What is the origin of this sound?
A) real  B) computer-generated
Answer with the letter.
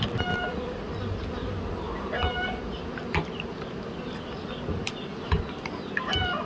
A